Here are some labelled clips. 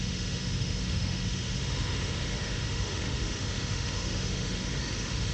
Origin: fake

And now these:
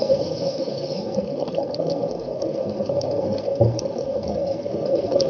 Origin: fake